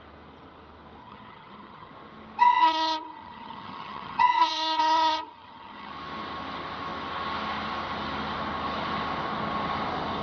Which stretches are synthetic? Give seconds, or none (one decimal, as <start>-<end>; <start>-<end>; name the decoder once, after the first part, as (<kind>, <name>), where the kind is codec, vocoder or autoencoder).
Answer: 1.0-1.9 (vocoder, HiFi-GAN); 2.4-5.9